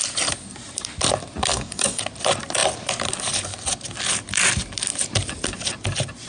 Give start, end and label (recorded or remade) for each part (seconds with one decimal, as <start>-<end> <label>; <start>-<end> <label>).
0.0-1.5 recorded; 1.5-2.0 remade; 2.0-6.3 recorded